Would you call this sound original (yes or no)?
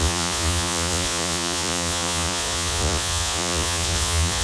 no